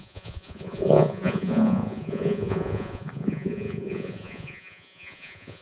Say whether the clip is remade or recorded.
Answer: remade